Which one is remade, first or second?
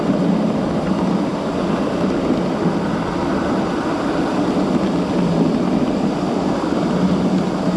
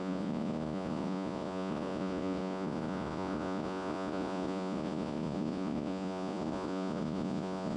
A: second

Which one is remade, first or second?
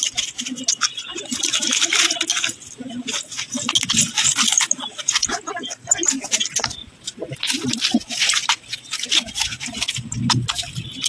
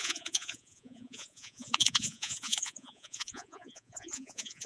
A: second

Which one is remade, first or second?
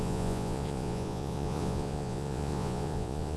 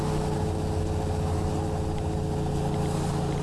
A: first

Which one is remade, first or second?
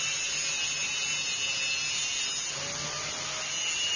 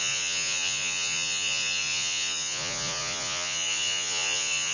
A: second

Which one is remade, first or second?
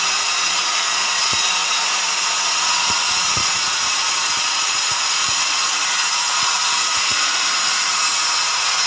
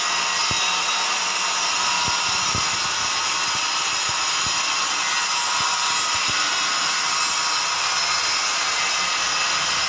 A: first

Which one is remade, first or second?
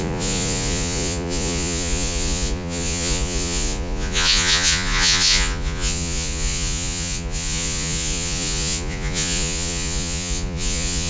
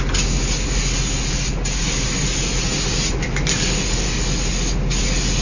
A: first